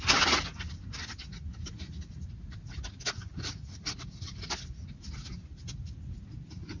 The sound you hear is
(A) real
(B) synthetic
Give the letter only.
A